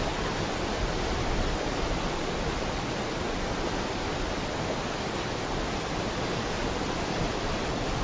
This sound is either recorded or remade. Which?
recorded